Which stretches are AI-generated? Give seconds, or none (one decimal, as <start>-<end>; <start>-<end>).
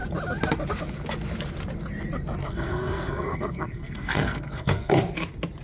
2.4-5.0